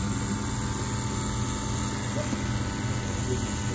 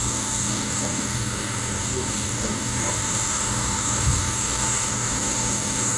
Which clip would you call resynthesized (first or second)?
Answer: second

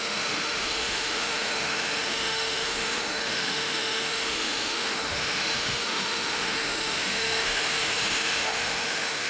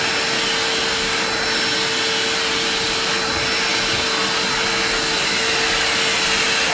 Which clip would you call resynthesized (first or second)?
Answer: first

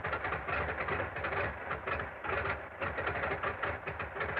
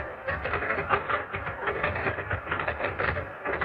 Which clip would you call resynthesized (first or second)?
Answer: second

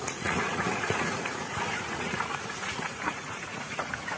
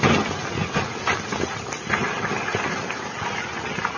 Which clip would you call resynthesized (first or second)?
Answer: first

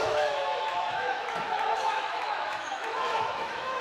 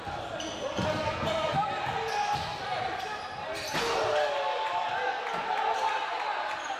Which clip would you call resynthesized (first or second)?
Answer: first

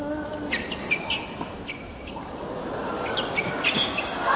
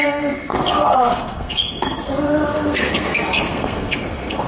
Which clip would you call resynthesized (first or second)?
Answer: second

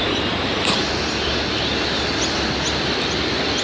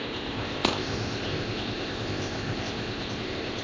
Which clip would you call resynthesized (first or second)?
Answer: second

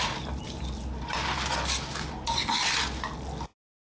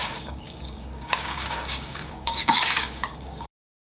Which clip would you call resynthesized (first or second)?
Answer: second